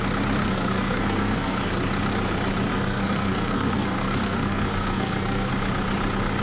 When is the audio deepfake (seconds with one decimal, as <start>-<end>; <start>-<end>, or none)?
0.4-1.7; 2.7-5.5